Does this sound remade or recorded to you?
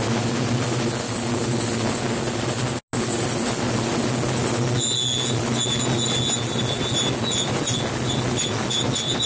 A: recorded